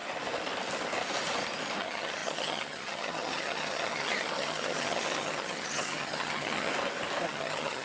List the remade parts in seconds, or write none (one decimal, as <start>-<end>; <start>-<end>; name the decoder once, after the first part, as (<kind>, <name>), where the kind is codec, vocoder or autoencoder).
1.8-6.7 (vocoder, HiFi-GAN); 7.3-7.8